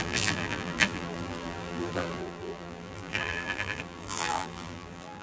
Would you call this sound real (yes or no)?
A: no